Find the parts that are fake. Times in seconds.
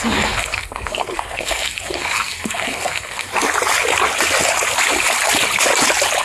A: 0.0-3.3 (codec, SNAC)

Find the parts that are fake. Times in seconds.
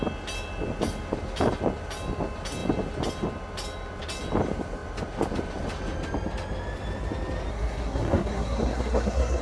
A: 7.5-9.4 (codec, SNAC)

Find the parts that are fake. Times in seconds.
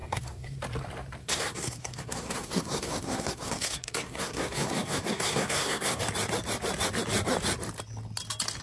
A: 0.0-0.6 (codec, SNAC); 1.2-6.0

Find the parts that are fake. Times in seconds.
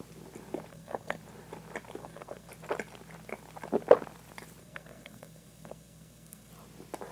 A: 0.7-1.2 (codec, SNAC); 2.0-2.5; 4.6-6.5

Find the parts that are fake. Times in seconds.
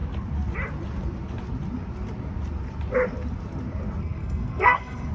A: 4.0-5.1 (codec, SNAC)